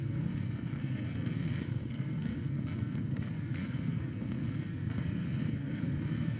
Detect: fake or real fake